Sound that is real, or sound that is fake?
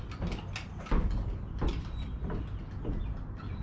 real